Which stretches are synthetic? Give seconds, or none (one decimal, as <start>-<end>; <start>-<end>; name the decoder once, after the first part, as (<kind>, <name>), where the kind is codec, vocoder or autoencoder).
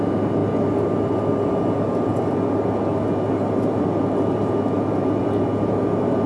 none